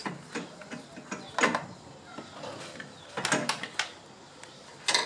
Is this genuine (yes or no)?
yes